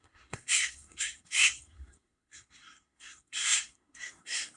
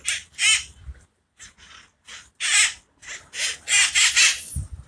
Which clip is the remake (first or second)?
first